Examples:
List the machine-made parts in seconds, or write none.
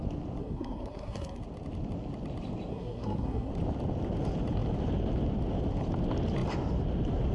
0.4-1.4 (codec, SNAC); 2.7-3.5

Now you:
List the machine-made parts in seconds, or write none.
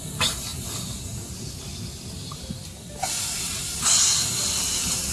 none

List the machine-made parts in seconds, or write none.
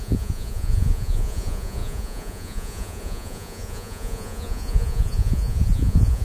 0.0-6.2 (vocoder, Vocos)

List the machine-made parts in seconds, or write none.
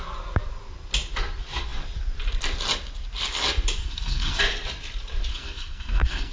3.8-4.4 (codec, SNAC); 5.3-6.3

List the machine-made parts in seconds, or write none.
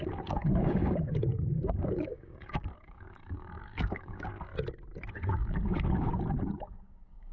0.0-4.5 (codec, DAC); 5.1-6.1; 6.6-7.3